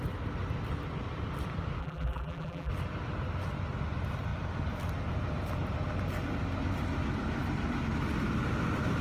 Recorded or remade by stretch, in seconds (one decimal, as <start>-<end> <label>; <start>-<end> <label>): 0.0-1.8 recorded; 1.8-2.7 remade; 2.7-9.0 recorded